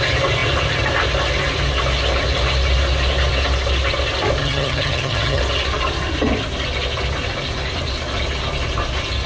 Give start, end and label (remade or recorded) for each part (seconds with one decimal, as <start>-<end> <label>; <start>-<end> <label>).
0.0-4.4 recorded; 4.4-5.4 remade; 5.4-9.3 recorded

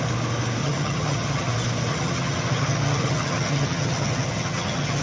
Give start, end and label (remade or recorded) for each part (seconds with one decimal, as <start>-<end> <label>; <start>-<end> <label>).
0.0-0.6 recorded; 0.6-1.5 remade; 1.5-1.9 recorded; 1.9-5.0 remade